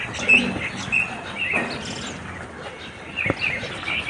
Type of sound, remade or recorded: recorded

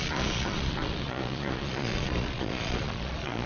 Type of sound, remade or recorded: remade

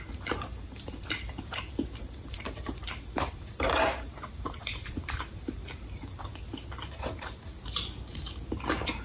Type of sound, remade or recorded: remade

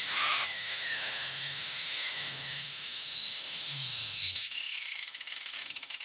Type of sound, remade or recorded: remade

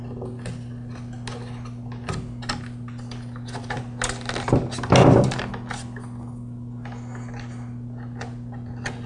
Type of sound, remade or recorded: recorded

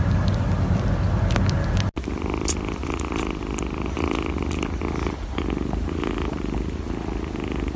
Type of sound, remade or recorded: recorded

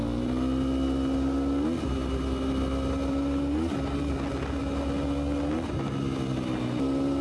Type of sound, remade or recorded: recorded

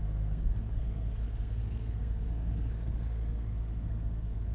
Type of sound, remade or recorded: remade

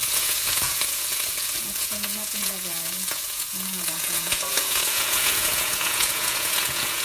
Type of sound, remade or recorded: remade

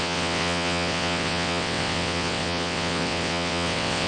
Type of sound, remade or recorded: remade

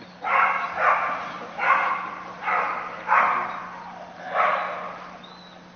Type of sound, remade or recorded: recorded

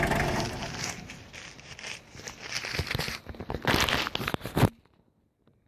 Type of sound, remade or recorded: recorded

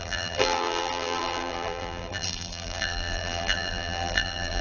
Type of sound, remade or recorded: remade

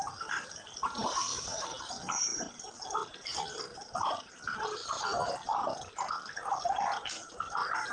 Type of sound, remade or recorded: recorded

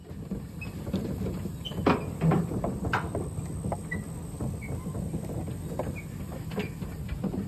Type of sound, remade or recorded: recorded